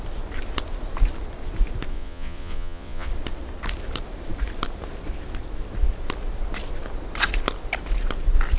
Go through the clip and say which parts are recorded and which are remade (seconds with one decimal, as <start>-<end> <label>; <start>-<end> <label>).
0.0-1.9 recorded; 1.9-3.1 remade; 3.1-8.6 recorded

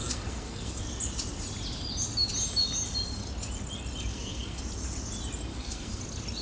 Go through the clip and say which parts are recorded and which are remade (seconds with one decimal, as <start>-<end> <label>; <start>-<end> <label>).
0.0-0.8 remade; 0.8-4.1 recorded; 4.1-4.6 remade; 4.6-5.5 recorded; 5.5-6.0 remade; 6.0-6.4 recorded

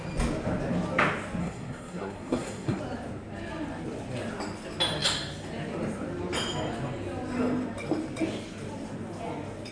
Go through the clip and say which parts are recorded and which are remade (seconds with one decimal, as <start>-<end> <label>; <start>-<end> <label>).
0.0-1.4 recorded; 1.4-2.8 remade; 2.8-9.7 recorded

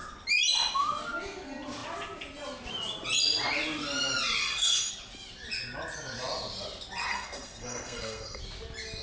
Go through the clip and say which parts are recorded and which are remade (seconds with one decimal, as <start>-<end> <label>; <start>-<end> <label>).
0.0-4.4 recorded; 4.4-4.9 remade; 4.9-7.1 recorded; 7.1-8.4 remade; 8.4-9.0 recorded

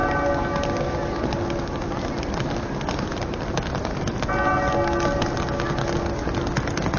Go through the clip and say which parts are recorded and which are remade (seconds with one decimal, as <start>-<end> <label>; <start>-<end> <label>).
0.0-7.0 recorded

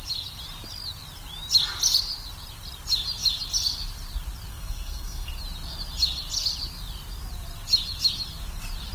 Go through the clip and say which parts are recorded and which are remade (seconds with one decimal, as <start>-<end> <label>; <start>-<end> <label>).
0.0-4.5 recorded; 4.5-5.3 remade; 5.3-8.9 recorded